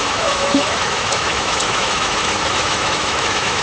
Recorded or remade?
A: remade